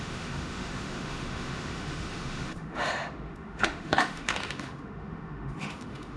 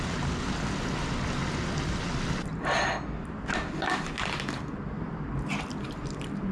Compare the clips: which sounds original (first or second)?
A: second